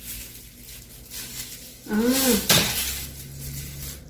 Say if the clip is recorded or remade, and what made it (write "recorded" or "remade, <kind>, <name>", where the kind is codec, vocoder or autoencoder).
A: recorded